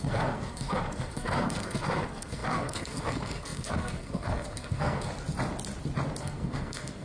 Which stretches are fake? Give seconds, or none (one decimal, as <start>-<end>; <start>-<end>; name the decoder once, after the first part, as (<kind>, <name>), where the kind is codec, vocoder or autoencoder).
0.0-5.1 (codec, SNAC); 6.2-7.0